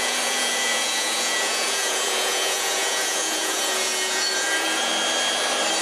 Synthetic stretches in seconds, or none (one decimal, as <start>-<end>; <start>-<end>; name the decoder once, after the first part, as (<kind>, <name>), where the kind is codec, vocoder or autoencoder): 0.0-4.9 (vocoder, Vocos)